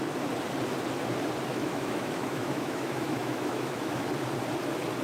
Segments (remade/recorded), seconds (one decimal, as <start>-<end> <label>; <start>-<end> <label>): 0.0-1.5 recorded; 1.5-4.1 remade; 4.1-5.0 recorded

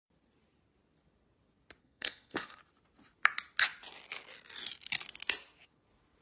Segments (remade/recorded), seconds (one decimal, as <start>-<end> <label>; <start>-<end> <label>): 0.0-1.8 recorded; 1.8-2.6 remade; 2.6-6.2 recorded